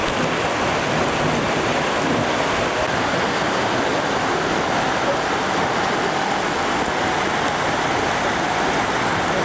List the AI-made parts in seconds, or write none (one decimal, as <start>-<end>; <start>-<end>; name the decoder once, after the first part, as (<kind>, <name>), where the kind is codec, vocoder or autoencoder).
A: none